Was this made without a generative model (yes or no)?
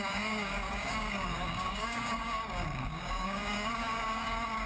no